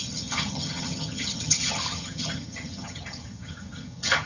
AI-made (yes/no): yes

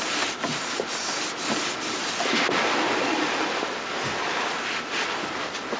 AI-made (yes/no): no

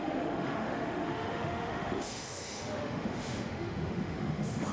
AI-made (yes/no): yes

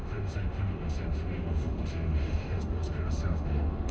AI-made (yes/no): yes